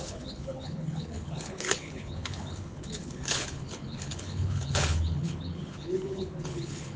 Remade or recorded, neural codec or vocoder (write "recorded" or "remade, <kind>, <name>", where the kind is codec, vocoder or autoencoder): remade, codec, HILCodec